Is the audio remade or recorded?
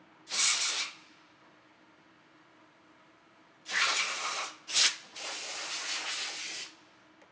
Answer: recorded